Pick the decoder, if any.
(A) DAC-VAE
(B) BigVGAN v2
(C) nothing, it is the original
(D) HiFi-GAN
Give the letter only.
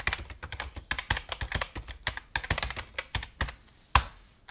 C